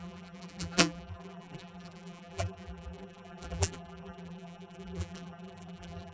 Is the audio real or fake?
fake